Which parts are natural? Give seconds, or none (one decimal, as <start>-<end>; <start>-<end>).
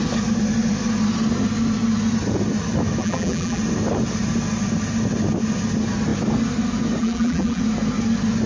0.0-3.0; 3.6-7.0; 7.6-8.5